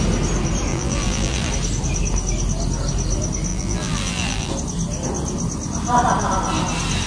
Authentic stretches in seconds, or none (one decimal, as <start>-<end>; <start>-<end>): 0.0-0.7; 1.5-3.5; 4.5-7.1